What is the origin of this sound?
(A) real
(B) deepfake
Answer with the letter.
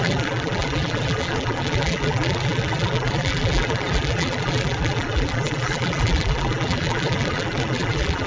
B